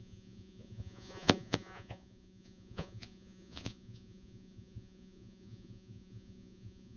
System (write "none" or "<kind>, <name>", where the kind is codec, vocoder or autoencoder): vocoder, Vocos